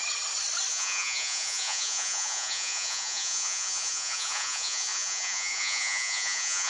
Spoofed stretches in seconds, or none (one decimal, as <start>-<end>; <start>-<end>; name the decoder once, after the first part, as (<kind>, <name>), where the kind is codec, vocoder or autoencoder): 0.7-6.7 (vocoder, Vocos)